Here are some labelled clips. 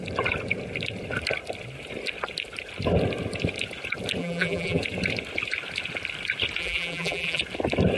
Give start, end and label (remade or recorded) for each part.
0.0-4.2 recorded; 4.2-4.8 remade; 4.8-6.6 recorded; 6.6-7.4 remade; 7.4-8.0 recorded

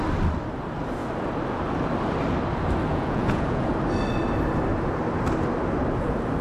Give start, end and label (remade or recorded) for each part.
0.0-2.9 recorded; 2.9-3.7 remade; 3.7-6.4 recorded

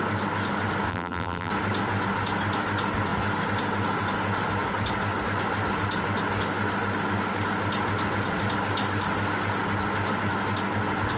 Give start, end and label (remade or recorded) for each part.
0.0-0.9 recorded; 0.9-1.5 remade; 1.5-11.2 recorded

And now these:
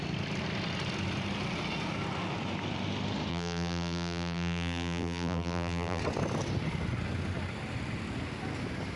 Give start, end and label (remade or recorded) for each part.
0.0-3.3 recorded; 3.3-6.0 remade; 6.0-9.0 recorded

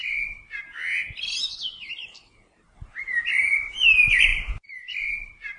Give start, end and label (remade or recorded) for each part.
0.0-3.4 recorded; 3.4-5.6 remade

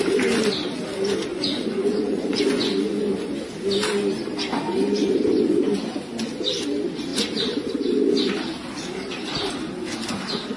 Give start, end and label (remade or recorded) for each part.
0.0-1.3 recorded; 1.3-3.0 remade; 3.0-10.6 recorded